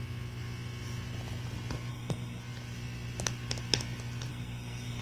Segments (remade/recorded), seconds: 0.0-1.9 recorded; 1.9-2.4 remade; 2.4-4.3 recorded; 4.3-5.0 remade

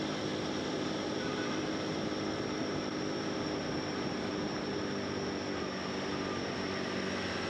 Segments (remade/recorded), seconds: 0.0-0.6 recorded; 0.6-4.8 remade; 4.8-7.5 recorded

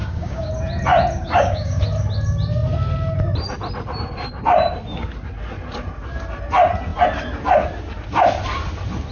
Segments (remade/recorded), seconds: 0.0-0.5 remade; 0.5-1.2 recorded; 1.2-1.8 remade; 1.8-9.1 recorded